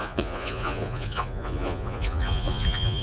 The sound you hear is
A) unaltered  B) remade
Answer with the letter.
B